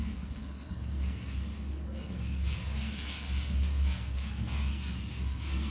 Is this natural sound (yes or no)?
no